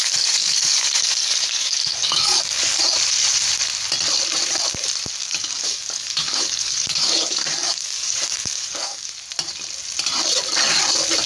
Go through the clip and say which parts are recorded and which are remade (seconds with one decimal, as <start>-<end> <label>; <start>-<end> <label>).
0.0-2.8 remade; 2.8-5.2 recorded; 5.2-9.1 remade; 9.1-11.3 recorded